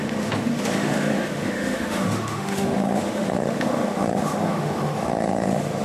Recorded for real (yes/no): no